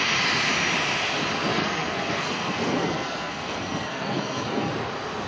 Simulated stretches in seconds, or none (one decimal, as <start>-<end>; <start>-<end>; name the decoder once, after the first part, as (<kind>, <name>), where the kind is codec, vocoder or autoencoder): 1.5-4.7 (codec, SNAC)